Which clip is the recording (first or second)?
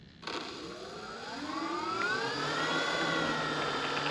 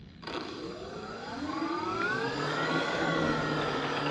first